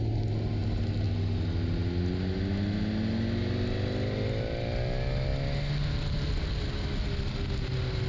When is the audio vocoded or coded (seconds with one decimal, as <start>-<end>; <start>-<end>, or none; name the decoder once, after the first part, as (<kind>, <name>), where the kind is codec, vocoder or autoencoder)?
none

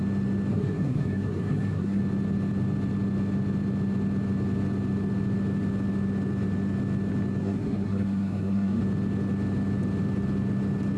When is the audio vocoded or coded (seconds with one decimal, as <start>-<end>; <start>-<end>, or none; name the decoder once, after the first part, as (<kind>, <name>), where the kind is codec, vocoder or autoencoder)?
0.5-2.0 (codec, SNAC); 7.4-8.8

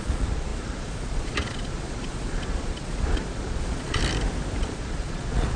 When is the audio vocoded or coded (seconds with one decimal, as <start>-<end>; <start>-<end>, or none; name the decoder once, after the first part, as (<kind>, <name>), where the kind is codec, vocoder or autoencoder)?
0.0-4.0 (vocoder, Vocos); 4.6-5.6

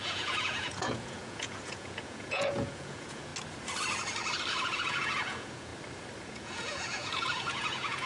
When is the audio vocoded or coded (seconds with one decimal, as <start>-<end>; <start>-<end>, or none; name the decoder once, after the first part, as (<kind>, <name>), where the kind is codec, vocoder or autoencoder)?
0.0-3.3 (vocoder, Vocos); 4.5-5.7; 6.2-8.1

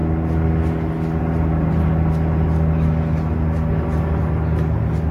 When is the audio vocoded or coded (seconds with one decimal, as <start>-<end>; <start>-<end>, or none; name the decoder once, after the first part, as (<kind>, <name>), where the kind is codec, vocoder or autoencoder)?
none